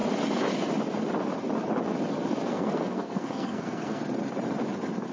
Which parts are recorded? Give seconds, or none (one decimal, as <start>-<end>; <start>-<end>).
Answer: 0.0-2.5; 4.0-5.1